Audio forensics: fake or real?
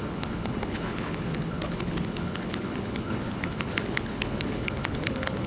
fake